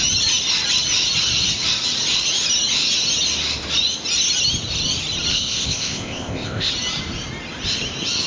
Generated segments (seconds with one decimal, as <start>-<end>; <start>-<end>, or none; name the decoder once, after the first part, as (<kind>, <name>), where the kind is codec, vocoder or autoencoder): 5.3-6.7 (codec, ZipCodec)